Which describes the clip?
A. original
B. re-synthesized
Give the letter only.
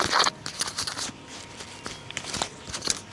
A